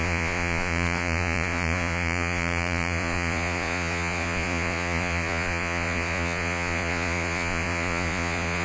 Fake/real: fake